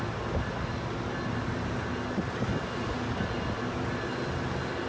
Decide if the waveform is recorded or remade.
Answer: recorded